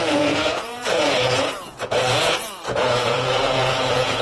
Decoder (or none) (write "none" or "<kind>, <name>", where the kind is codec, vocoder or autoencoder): vocoder, Vocos